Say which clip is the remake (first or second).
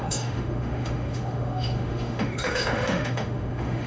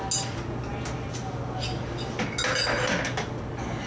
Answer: first